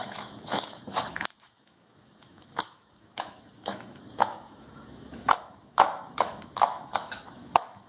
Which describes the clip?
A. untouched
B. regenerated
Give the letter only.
B